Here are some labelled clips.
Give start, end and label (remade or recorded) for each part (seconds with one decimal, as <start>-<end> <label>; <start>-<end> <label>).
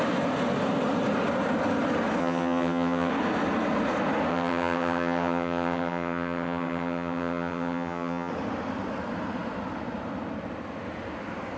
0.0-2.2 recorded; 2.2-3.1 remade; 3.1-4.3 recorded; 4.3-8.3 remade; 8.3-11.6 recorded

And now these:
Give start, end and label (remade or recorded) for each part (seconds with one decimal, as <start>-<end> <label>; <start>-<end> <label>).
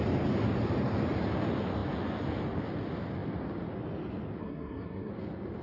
0.0-4.4 recorded; 4.4-5.1 remade; 5.1-5.6 recorded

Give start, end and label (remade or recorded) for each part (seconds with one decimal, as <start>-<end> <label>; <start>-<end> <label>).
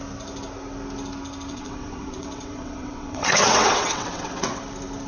0.0-1.5 recorded; 1.5-4.6 remade; 4.6-5.1 recorded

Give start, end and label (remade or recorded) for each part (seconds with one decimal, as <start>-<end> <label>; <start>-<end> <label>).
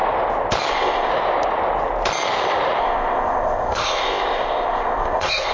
0.0-0.7 recorded; 0.7-1.1 remade; 1.1-2.8 recorded; 2.8-5.5 remade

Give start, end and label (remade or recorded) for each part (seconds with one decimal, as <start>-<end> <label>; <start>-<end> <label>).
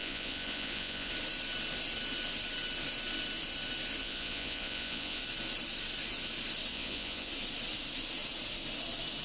0.0-1.1 remade; 1.1-4.0 recorded; 4.0-5.2 remade; 5.2-6.7 recorded; 6.7-7.3 remade; 7.3-9.2 recorded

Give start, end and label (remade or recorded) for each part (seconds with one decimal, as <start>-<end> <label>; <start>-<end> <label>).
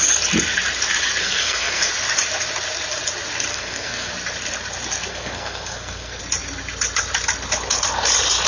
0.0-1.2 recorded; 1.2-1.9 remade; 1.9-3.5 recorded; 3.5-4.1 remade; 4.1-5.1 recorded; 5.1-6.2 remade; 6.2-8.5 recorded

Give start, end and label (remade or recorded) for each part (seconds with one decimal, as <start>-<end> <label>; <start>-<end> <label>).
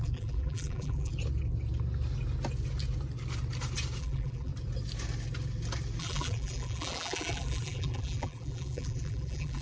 0.0-1.1 remade; 1.1-4.0 recorded; 4.0-4.5 remade; 4.5-6.0 recorded; 6.0-9.6 remade